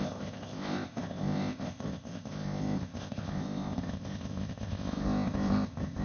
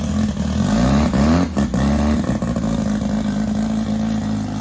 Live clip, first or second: second